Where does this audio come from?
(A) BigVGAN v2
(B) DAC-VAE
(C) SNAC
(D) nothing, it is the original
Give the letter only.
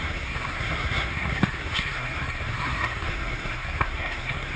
C